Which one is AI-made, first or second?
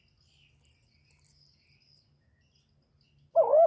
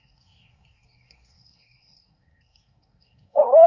second